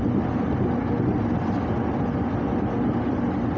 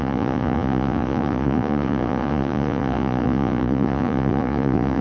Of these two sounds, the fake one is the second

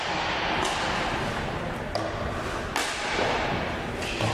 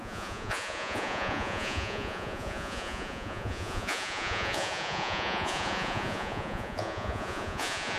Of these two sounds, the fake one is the second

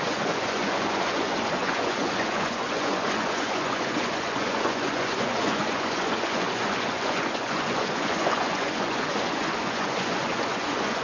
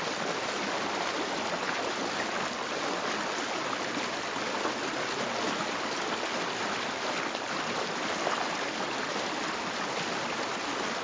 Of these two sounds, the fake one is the first